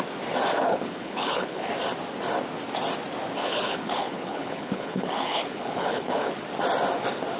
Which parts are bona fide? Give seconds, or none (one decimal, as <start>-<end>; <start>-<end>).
0.0-0.5; 1.7-3.4; 6.4-7.4